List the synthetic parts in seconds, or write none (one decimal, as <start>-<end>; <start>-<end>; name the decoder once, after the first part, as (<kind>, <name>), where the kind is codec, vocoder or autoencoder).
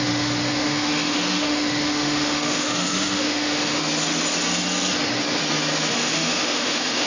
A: 0.0-3.8 (autoencoder, DAC-VAE); 5.9-7.1